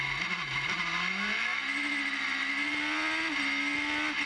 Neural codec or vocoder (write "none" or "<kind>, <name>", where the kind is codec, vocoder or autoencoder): none